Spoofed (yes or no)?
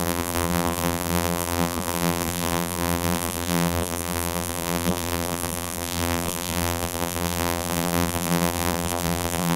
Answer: yes